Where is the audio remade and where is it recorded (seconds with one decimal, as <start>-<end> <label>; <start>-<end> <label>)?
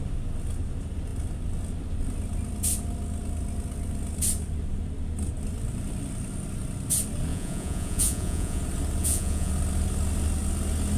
0.0-7.3 recorded; 7.3-8.6 remade; 8.6-9.0 recorded; 9.0-9.5 remade; 9.5-11.0 recorded